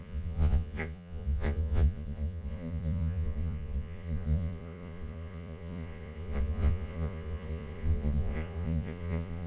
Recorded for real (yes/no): no